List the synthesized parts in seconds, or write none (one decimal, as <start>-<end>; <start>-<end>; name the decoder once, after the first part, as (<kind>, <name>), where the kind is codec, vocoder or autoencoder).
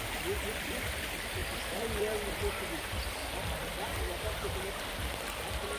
1.4-4.9 (vocoder, BigVGAN v2)